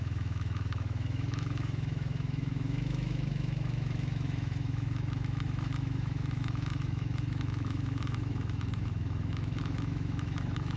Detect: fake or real fake